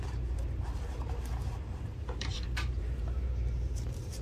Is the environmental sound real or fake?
fake